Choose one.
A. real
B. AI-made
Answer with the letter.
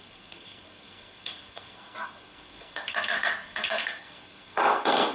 B